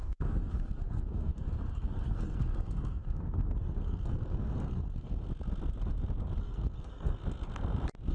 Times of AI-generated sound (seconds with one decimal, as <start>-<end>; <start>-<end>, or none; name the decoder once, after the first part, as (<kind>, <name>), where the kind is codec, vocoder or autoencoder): 0.0-5.2 (codec, SNAC); 6.4-7.2